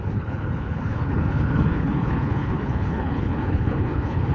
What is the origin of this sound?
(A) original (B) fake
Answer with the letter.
B